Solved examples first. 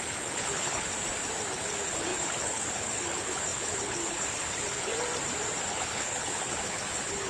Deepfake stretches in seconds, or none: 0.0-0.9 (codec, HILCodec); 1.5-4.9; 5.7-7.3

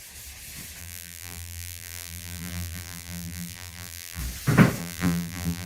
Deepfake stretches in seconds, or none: 0.8-4.2 (vocoder, BigVGAN v2); 4.8-5.7